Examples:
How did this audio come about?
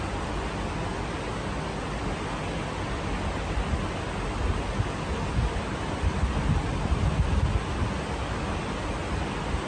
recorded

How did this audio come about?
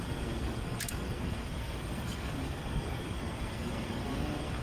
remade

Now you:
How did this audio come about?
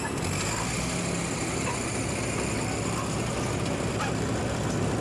recorded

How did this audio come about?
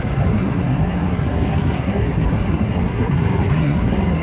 remade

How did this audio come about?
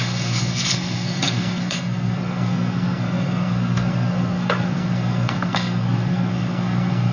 remade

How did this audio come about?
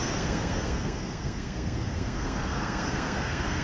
remade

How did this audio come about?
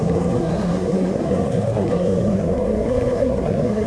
remade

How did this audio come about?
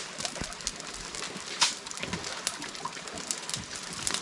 recorded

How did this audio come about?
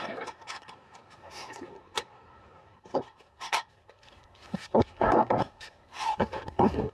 remade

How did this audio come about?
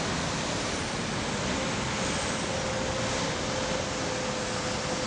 recorded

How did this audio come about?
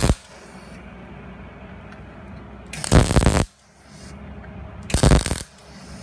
recorded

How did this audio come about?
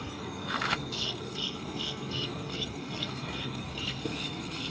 remade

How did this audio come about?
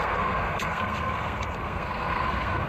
remade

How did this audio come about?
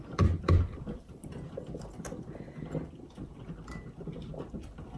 recorded